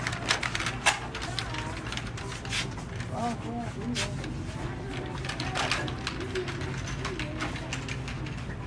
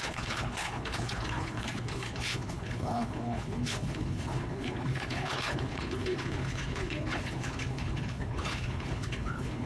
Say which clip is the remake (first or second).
second